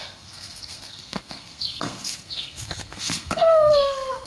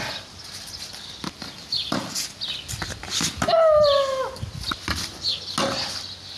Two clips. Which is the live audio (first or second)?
second